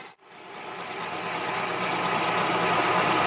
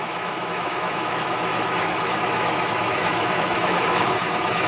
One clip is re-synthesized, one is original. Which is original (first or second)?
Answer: first